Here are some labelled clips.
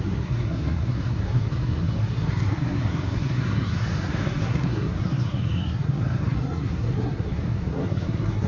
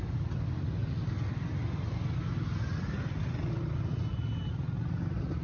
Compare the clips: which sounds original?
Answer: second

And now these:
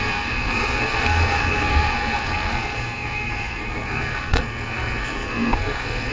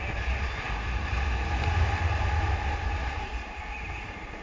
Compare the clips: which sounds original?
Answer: second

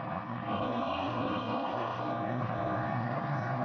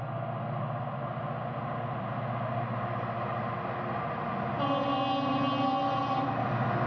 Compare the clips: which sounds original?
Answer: second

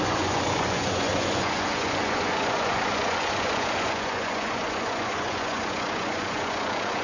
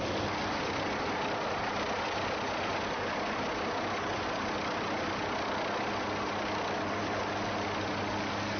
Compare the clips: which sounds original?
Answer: second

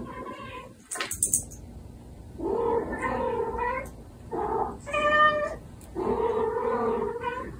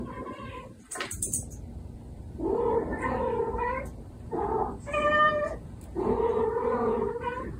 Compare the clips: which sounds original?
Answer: first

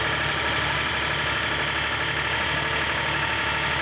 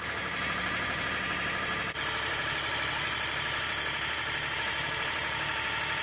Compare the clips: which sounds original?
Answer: first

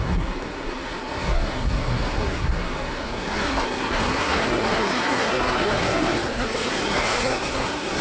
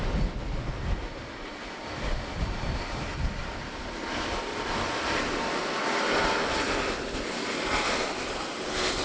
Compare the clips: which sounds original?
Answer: second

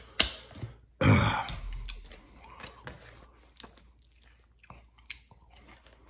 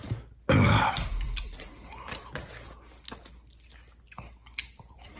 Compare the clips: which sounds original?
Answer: first